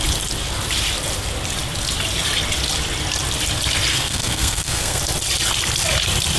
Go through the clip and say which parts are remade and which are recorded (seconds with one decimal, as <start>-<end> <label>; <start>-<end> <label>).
0.0-3.9 recorded; 3.9-5.0 remade; 5.0-6.4 recorded